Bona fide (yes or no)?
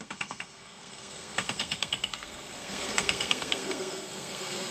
no